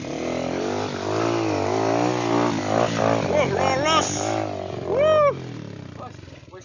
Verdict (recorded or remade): recorded